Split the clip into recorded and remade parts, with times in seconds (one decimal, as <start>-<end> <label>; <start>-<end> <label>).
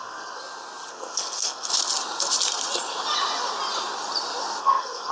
0.0-0.4 remade; 0.4-0.9 recorded; 0.9-1.7 remade; 1.7-4.6 recorded; 4.6-5.1 remade